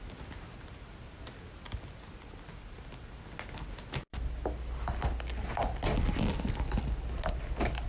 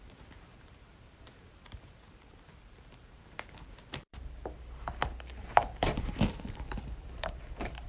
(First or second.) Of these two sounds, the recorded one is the first